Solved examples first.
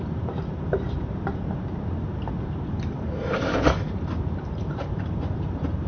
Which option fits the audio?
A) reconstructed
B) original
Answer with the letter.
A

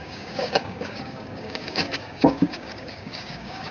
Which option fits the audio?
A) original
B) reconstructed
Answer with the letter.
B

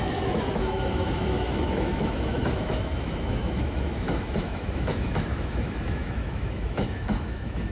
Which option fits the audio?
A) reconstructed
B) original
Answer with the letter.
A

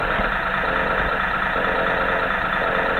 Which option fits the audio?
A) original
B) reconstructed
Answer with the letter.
A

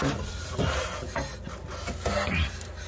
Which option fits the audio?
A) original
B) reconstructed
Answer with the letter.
A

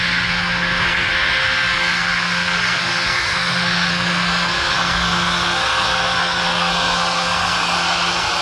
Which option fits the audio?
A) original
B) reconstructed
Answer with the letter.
B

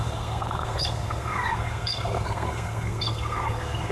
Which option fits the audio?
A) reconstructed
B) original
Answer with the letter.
A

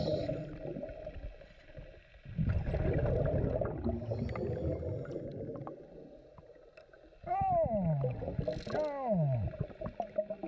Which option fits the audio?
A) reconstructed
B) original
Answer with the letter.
B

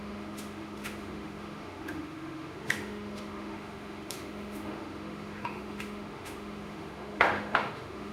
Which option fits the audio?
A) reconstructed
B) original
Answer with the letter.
A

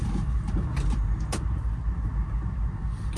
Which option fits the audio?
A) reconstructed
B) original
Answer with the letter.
B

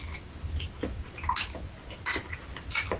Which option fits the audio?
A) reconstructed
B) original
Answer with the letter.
B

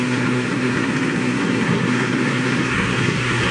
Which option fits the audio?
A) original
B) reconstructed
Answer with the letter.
B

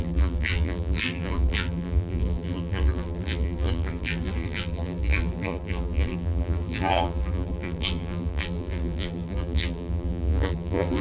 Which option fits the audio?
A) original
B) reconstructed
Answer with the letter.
B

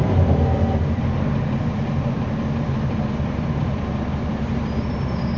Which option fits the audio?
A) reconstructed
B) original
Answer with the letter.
B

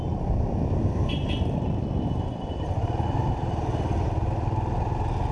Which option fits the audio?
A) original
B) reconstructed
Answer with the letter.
A